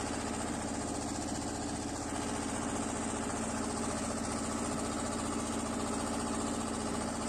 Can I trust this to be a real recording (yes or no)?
yes